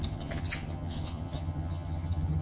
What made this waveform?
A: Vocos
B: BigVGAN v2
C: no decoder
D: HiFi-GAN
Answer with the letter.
D